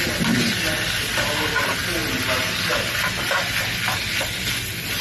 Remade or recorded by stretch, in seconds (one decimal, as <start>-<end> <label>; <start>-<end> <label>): 0.0-5.0 recorded